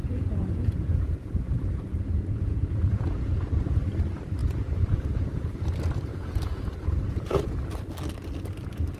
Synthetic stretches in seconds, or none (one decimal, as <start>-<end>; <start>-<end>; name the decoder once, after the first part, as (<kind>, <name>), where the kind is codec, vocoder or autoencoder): 0.0-3.8 (vocoder, Vocos); 4.4-5.5; 6.1-7.5